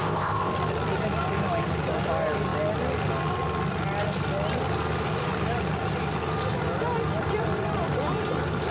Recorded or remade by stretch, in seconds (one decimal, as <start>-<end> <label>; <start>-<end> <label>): 0.0-0.5 remade; 0.5-8.7 recorded